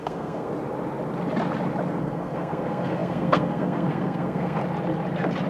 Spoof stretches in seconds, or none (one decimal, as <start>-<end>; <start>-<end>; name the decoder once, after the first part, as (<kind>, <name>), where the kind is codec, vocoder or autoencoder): 0.0-0.5 (codec, SNAC); 2.0-4.6